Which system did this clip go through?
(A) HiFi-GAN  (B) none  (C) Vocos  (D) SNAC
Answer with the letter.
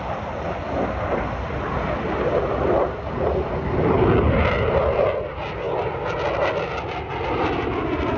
B